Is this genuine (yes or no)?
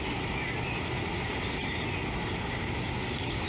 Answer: yes